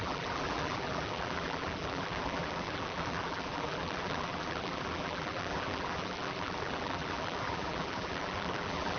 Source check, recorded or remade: remade